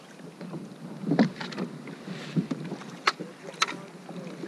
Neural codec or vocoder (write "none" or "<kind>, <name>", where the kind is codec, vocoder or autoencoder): none